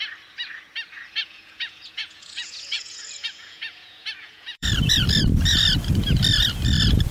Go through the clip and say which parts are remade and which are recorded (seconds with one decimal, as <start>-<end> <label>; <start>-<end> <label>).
0.0-1.1 recorded; 1.1-4.7 remade; 4.7-7.1 recorded